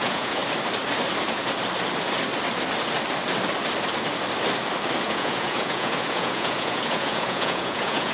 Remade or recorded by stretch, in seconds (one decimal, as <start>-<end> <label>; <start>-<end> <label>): 0.0-0.4 remade; 0.4-5.0 recorded; 5.0-8.1 remade